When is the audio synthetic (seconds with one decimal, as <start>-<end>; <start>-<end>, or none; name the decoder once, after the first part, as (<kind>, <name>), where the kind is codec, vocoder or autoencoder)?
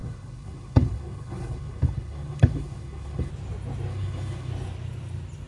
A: 0.0-3.3 (codec, HILCodec); 3.9-4.5